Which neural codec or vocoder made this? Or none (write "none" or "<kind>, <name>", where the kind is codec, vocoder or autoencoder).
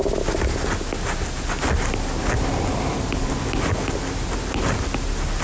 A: none